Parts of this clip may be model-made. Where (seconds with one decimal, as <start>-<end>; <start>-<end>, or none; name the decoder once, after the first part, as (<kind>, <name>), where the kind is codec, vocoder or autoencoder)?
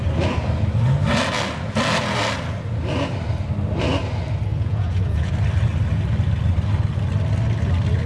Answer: 4.5-5.3 (vocoder, Vocos)